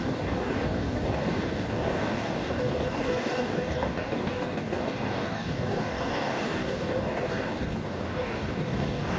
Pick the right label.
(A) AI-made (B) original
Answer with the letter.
A